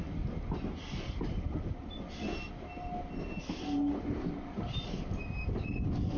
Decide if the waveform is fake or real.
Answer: real